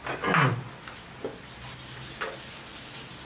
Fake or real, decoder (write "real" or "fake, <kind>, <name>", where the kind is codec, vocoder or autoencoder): real